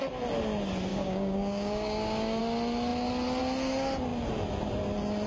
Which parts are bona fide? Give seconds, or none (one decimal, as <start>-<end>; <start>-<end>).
0.0-0.9; 2.4-5.3